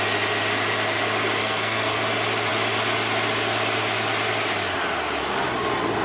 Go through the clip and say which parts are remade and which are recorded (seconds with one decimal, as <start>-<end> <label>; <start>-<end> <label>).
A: 0.0-1.4 recorded; 1.4-2.0 remade; 2.0-6.0 recorded